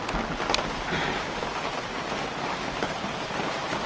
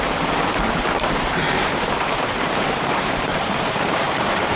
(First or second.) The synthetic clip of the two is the second